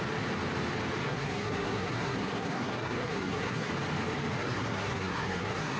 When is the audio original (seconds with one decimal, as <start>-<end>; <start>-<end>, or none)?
0.0-1.0; 3.7-4.4